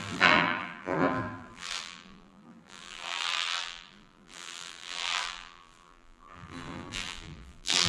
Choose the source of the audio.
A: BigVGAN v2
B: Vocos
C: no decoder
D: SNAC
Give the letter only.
A